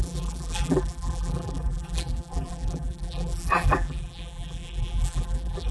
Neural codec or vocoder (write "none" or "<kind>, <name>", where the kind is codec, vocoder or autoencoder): vocoder, BigVGAN v2